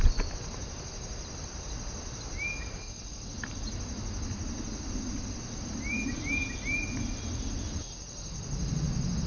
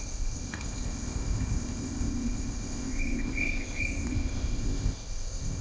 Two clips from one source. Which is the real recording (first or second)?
first